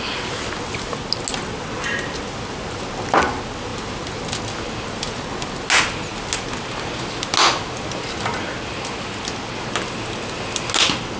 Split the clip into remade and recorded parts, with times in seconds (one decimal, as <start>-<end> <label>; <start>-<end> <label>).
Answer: 0.0-3.7 recorded; 3.7-4.2 remade; 4.2-11.2 recorded